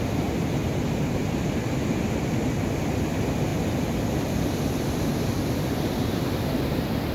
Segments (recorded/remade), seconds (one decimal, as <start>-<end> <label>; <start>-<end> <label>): 0.0-0.6 recorded; 0.6-1.4 remade; 1.4-7.1 recorded